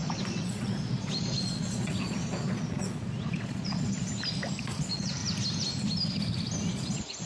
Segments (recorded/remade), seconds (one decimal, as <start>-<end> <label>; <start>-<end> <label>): 0.0-4.1 remade; 4.1-4.6 recorded; 4.6-5.2 remade; 5.2-6.7 recorded; 6.7-7.3 remade